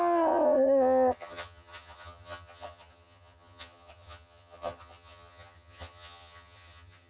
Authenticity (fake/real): fake